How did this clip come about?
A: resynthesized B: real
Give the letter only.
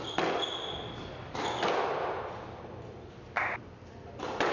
B